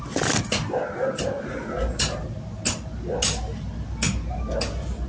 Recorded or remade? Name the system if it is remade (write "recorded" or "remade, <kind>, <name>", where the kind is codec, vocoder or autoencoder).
recorded